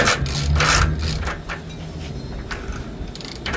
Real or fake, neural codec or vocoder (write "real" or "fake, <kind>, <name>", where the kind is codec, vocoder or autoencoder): real